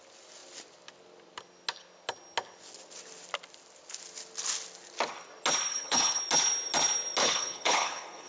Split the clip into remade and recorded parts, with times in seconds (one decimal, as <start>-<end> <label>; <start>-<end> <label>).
0.0-5.7 recorded; 5.7-6.2 remade; 6.2-7.2 recorded; 7.2-8.3 remade